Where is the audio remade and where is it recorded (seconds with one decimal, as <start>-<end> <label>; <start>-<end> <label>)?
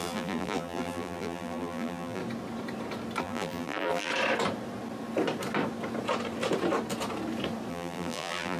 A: 0.0-2.2 remade; 2.2-3.2 recorded; 3.2-4.1 remade; 4.1-7.7 recorded; 7.7-8.6 remade